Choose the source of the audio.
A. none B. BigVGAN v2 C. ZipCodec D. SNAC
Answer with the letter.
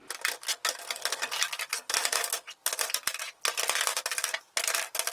A